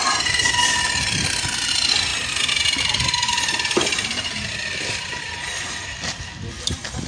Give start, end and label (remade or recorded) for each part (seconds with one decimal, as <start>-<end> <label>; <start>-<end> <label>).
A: 0.0-7.1 recorded